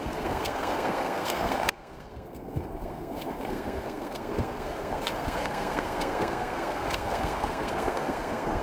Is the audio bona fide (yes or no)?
no